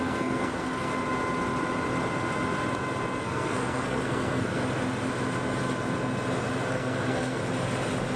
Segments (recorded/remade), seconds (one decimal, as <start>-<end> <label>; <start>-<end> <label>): 0.0-0.9 remade; 0.9-3.2 recorded; 3.2-4.6 remade; 4.6-6.7 recorded; 6.7-7.4 remade; 7.4-8.2 recorded